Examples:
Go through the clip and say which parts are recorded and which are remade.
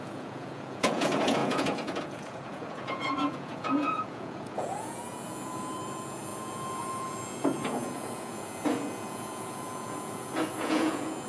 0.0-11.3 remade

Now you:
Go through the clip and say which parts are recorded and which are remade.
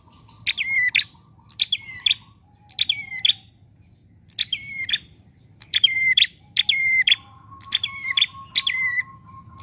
0.0-4.7 recorded; 4.7-6.3 remade; 6.3-9.6 recorded